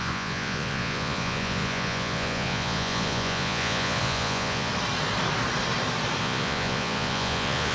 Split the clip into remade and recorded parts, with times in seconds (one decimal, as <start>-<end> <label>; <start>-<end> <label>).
0.0-4.7 remade; 4.7-6.2 recorded; 6.2-7.7 remade